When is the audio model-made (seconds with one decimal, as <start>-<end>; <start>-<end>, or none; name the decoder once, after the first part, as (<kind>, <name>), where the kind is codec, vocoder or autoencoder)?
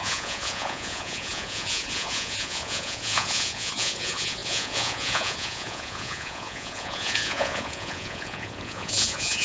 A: 0.0-9.4 (vocoder, Vocos)